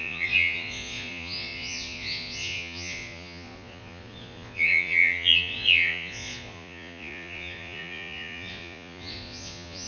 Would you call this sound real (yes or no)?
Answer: no